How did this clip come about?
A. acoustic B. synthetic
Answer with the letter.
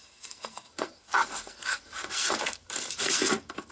B